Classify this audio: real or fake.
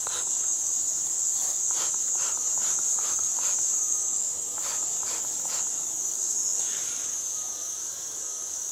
fake